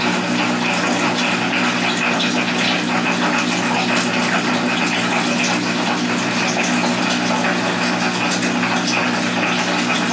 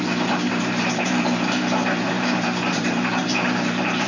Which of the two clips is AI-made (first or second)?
second